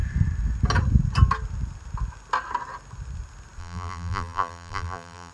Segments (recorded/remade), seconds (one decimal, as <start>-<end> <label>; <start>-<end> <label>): 0.0-3.6 recorded; 3.6-5.3 remade